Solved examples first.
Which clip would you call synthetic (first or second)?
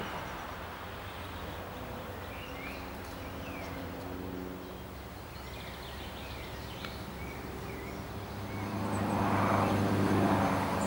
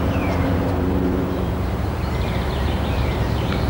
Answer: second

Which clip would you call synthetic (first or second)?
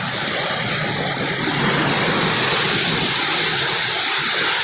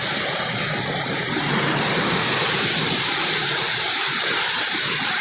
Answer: second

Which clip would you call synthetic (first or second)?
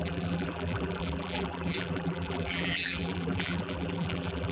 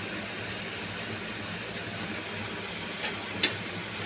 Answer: first